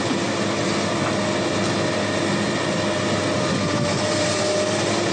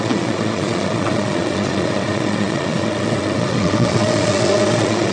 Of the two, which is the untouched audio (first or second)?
first